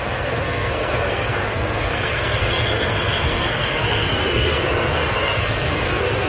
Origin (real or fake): fake